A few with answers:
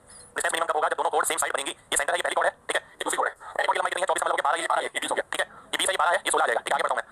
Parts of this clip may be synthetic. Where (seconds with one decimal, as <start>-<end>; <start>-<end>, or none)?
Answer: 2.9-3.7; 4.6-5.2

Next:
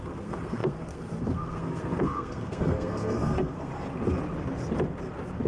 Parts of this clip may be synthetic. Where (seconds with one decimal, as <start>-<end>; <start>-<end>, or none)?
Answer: 0.0-3.7

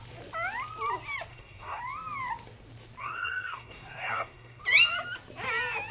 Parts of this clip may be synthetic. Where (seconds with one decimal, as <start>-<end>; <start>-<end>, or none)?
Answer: 1.3-1.8; 3.0-4.6

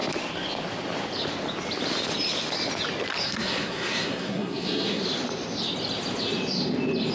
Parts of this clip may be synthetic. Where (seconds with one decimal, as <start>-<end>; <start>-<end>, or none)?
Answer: 3.2-5.0

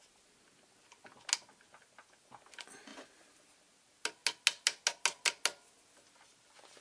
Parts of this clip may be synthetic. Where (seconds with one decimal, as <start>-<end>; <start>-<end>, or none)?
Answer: none

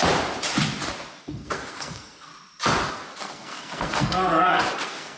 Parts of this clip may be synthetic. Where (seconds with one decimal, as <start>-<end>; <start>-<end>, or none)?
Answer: 1.2-2.3; 2.9-5.2